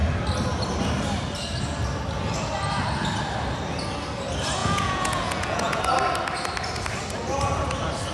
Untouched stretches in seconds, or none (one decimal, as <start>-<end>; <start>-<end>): 0.0-4.6; 5.8-8.1